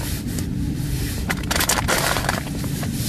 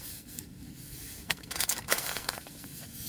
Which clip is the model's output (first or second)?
second